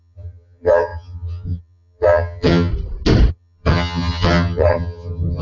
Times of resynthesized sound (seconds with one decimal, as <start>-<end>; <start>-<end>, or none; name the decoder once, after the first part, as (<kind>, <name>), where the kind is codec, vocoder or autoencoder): 0.0-2.7 (vocoder, HiFi-GAN); 3.3-5.4